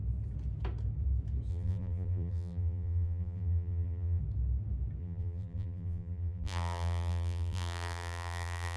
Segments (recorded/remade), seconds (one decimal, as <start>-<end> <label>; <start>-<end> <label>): 0.0-1.5 recorded; 1.5-4.2 remade; 4.2-5.0 recorded; 5.0-8.8 remade